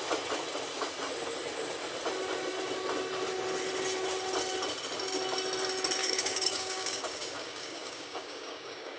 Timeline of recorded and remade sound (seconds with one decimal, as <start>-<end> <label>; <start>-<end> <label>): 0.0-6.0 recorded; 6.0-9.0 remade